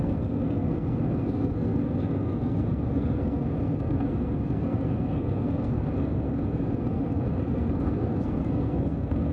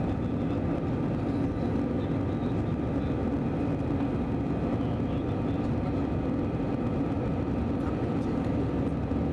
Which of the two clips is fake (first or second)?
first